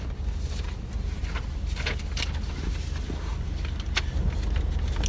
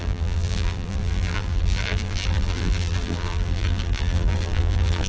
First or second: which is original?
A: first